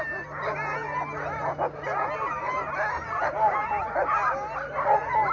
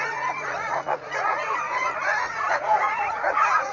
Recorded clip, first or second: first